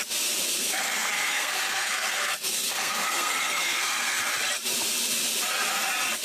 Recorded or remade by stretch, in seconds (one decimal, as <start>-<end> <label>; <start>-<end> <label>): 0.0-0.5 recorded; 0.5-4.2 remade; 4.2-6.2 recorded

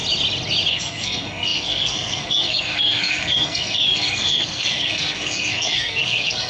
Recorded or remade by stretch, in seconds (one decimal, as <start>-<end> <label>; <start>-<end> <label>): 0.0-0.7 recorded; 0.7-6.5 remade

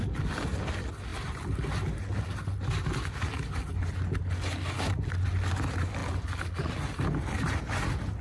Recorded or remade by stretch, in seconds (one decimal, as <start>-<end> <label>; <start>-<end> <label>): 0.0-8.2 recorded

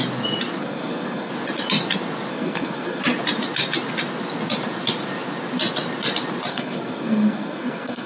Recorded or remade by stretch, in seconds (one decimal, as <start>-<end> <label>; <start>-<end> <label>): 0.0-0.6 recorded; 0.6-1.3 remade; 1.3-2.3 recorded; 2.3-3.0 remade; 3.0-6.5 recorded; 6.5-8.1 remade

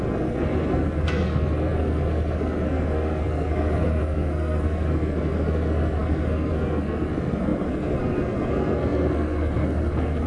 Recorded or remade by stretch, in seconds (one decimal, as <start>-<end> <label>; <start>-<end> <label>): 0.0-10.3 remade

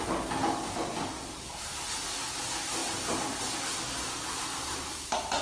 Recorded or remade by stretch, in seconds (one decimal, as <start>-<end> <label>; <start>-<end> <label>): 0.0-5.4 recorded

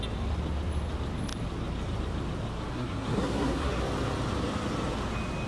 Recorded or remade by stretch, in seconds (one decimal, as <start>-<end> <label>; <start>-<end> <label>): 0.0-2.7 recorded; 2.7-3.8 remade; 3.8-5.5 recorded

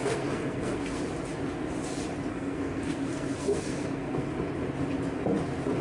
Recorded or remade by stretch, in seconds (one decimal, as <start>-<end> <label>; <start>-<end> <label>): 0.0-1.0 remade; 1.0-2.3 recorded; 2.3-4.3 remade; 4.3-5.8 recorded